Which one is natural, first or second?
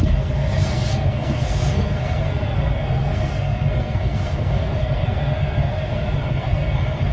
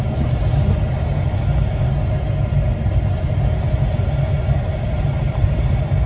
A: second